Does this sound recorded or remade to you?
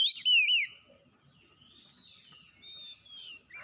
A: recorded